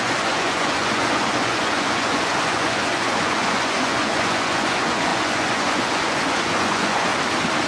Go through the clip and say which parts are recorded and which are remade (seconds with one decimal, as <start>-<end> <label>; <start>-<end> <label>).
0.0-7.1 remade; 7.1-7.7 recorded